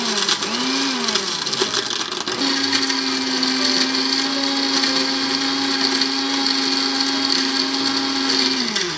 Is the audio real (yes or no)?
yes